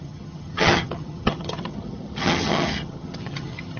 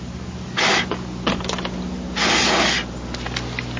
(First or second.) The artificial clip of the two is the first